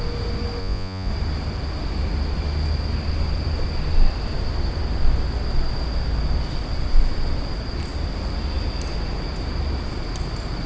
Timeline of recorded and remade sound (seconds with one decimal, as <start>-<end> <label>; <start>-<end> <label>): 0.0-0.6 recorded; 0.6-1.1 remade; 1.1-10.7 recorded